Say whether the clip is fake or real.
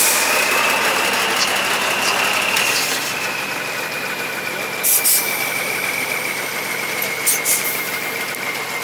real